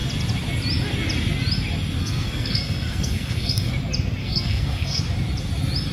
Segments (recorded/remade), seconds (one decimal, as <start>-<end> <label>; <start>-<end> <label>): 0.0-2.0 recorded; 2.0-3.7 remade; 3.7-4.2 recorded; 4.2-5.0 remade; 5.0-5.9 recorded